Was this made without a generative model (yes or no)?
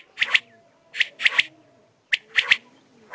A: yes